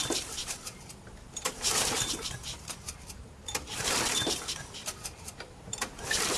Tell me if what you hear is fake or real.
fake